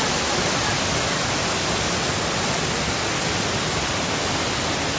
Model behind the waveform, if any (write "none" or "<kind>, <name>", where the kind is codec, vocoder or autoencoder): none